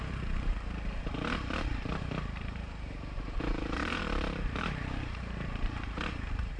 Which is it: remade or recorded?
remade